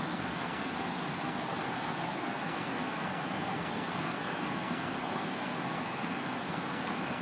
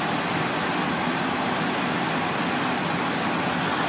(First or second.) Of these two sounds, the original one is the second